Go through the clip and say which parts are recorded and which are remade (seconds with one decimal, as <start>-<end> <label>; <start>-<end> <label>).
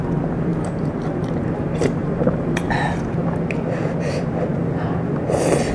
0.0-0.5 recorded; 0.5-1.3 remade; 1.3-2.0 recorded; 2.0-2.8 remade; 2.8-5.7 recorded